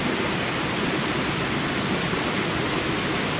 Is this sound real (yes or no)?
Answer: yes